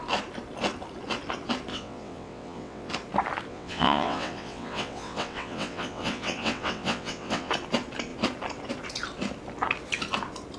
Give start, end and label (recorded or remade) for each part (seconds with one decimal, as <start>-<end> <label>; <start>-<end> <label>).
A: 0.0-1.7 recorded; 1.7-2.9 remade; 2.9-3.5 recorded; 3.5-7.5 remade; 7.5-10.6 recorded